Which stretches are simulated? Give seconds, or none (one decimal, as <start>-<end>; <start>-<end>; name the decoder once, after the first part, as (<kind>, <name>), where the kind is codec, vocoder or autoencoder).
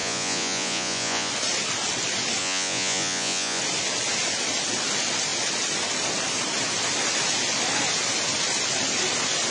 0.0-1.3 (vocoder, Vocos); 2.4-3.6